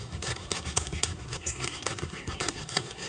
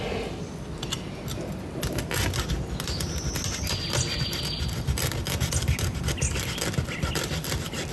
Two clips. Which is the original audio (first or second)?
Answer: second